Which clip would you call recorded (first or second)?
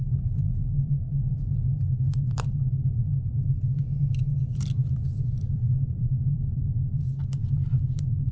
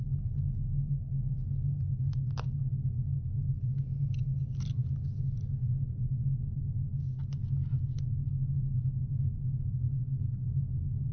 second